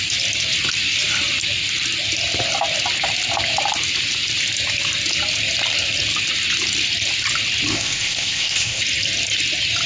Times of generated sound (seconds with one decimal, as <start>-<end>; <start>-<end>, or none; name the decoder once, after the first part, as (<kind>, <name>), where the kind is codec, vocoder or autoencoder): 7.7-8.8 (codec, ZipCodec)